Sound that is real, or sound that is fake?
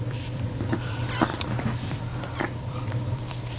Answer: fake